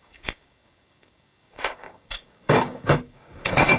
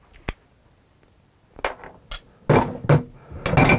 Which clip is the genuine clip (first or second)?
second